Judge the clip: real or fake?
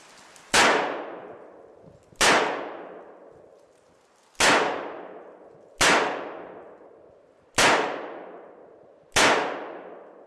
real